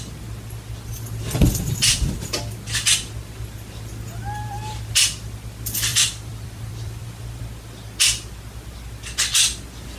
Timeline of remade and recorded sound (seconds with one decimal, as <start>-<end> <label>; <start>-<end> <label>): 0.0-5.9 recorded; 5.9-7.4 remade; 7.4-10.0 recorded